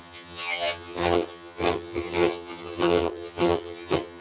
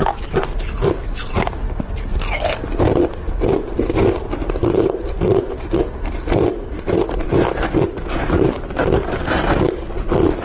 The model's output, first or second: first